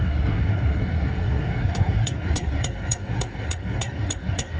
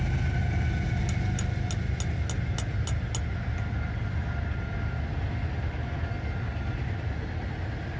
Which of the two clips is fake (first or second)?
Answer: first